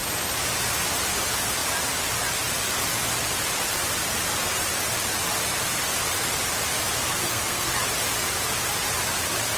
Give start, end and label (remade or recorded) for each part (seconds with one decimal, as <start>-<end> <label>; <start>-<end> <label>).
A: 0.0-7.2 recorded; 7.2-7.7 remade; 7.7-9.6 recorded